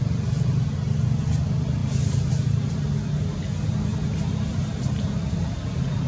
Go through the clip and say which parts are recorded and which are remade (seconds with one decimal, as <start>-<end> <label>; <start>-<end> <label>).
0.0-6.1 recorded